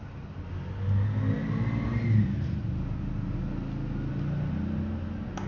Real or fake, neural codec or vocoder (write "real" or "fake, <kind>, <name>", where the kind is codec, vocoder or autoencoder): real